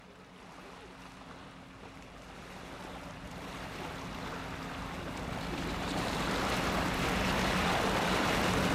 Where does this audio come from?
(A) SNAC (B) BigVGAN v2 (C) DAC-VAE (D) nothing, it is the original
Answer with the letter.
B